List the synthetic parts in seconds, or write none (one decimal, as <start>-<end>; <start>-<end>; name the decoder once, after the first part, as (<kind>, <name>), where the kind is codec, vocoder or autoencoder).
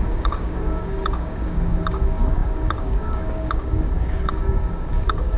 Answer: 0.0-5.4 (codec, DAC)